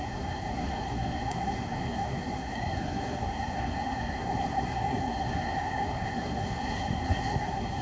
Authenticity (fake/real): fake